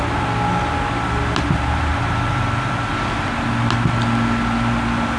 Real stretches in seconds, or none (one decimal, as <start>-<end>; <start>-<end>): 0.0-1.9; 2.9-5.2